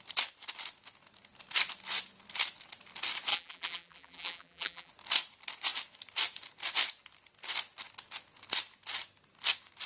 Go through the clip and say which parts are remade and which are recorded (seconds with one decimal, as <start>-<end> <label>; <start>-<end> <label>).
0.0-3.3 recorded; 3.3-4.9 remade; 4.9-9.9 recorded

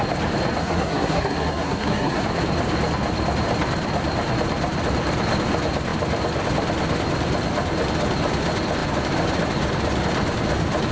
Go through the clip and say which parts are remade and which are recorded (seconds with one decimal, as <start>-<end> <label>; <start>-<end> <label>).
0.0-0.6 recorded; 0.6-2.2 remade; 2.2-10.9 recorded

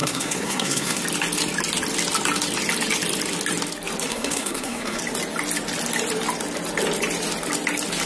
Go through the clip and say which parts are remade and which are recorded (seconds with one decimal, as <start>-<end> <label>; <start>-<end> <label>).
0.0-1.0 remade; 1.0-4.1 recorded; 4.1-5.0 remade; 5.0-8.1 recorded

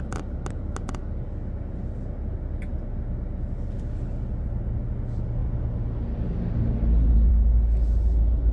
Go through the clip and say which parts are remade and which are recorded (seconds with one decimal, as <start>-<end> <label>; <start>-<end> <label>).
0.0-8.5 recorded